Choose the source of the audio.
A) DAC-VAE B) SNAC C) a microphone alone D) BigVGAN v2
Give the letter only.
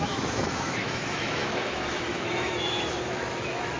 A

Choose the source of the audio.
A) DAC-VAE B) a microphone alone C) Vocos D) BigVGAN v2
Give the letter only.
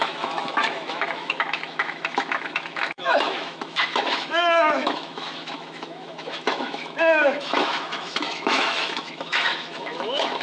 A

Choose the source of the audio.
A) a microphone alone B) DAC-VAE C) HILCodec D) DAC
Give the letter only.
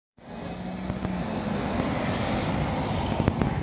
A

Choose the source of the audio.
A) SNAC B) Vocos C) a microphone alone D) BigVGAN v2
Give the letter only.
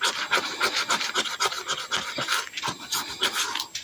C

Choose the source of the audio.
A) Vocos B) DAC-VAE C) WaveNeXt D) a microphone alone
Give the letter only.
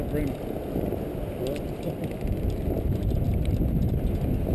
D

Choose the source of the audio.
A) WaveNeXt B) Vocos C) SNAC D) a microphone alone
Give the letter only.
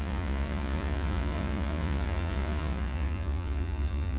B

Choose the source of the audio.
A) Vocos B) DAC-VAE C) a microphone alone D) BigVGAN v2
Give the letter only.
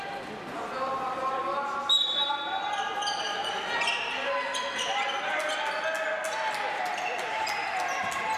C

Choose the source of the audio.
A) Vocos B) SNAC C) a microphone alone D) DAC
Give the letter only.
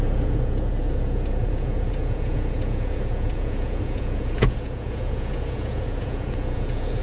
A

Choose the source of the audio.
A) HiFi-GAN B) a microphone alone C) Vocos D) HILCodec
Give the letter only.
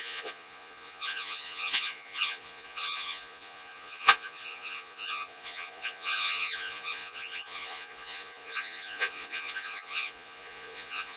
C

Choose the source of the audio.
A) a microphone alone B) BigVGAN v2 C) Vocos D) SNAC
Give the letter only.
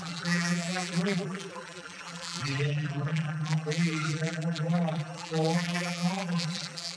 B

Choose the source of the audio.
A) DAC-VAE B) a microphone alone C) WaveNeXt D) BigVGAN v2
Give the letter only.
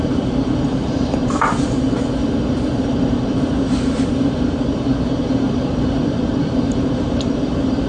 D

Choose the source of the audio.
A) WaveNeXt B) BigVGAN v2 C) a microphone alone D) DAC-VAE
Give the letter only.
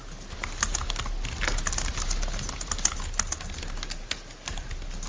C